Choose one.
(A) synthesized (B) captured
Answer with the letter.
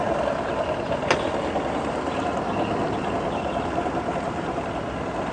B